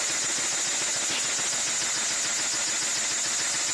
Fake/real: real